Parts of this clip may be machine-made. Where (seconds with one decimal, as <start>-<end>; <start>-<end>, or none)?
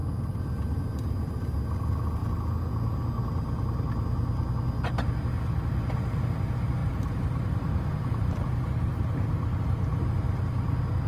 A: 6.8-10.0